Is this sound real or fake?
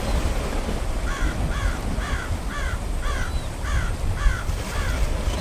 real